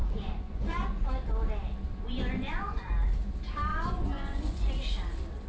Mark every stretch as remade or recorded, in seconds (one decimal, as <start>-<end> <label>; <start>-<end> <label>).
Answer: 0.0-1.1 remade; 1.1-1.9 recorded; 1.9-2.9 remade; 2.9-3.7 recorded; 3.7-4.7 remade; 4.7-5.5 recorded